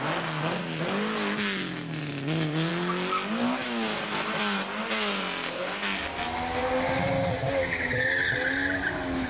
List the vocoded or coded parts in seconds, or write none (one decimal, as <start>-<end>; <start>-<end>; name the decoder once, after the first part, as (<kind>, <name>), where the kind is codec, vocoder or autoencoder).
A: none